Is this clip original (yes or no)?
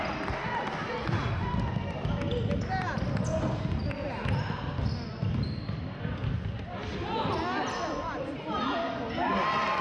yes